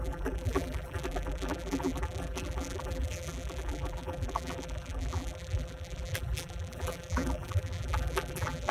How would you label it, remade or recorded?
remade